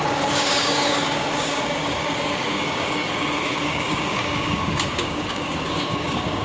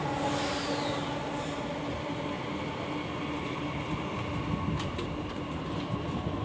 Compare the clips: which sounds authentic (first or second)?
second